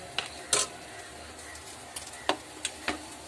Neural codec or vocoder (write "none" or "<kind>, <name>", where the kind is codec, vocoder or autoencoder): none